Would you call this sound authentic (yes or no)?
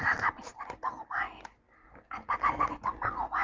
yes